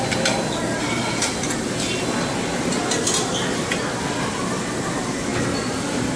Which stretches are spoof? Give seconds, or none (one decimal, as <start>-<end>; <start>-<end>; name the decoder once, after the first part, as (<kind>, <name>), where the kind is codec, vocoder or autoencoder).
none